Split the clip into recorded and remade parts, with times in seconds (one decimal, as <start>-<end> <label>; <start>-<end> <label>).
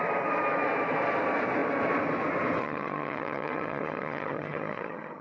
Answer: 0.0-2.6 recorded; 2.6-5.2 remade